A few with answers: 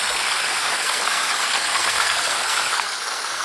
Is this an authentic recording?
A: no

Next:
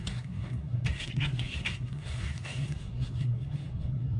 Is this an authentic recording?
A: no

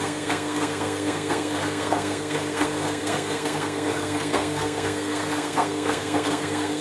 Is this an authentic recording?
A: no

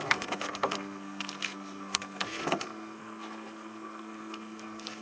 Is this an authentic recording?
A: no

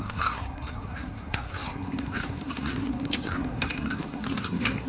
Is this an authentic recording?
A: no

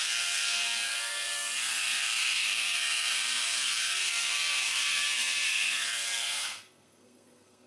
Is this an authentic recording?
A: no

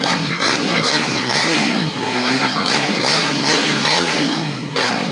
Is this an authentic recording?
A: no